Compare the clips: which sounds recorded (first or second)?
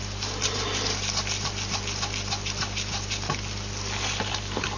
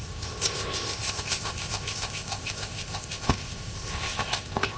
first